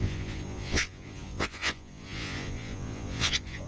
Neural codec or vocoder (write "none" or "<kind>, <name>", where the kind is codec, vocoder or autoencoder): vocoder, Vocos